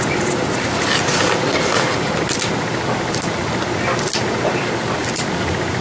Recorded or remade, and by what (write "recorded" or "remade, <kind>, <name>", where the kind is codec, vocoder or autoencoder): recorded